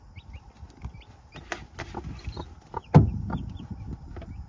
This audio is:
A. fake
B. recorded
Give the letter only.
B